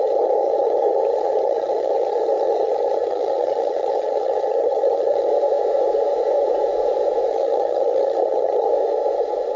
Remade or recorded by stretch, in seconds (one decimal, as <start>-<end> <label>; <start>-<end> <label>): 0.0-5.3 remade; 5.3-7.3 recorded; 7.3-8.7 remade; 8.7-9.6 recorded